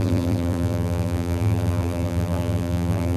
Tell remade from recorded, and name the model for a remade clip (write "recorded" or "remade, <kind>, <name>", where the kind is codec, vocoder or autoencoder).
remade, vocoder, BigVGAN v2